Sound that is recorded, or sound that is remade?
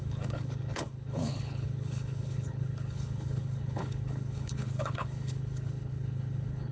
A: remade